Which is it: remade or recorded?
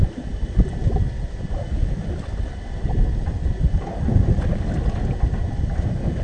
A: recorded